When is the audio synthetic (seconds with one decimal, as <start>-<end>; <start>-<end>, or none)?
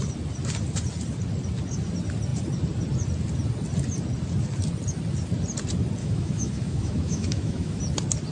6.0-7.8